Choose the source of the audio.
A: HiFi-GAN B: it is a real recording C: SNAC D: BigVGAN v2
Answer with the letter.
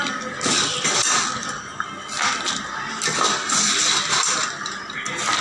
B